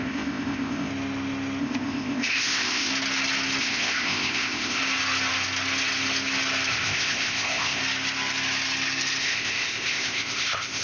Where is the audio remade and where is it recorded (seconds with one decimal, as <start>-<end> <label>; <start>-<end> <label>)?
0.0-0.9 remade; 0.9-1.6 recorded; 1.6-2.9 remade; 2.9-3.6 recorded; 3.6-4.8 remade; 4.8-6.7 recorded; 6.7-7.8 remade; 7.8-9.2 recorded; 9.2-10.8 remade